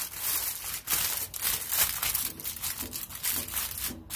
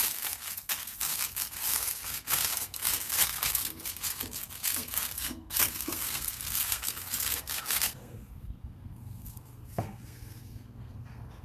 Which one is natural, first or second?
first